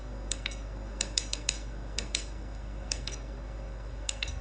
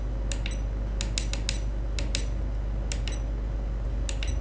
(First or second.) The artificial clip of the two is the first